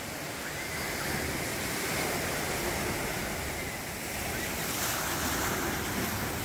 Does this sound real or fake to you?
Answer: real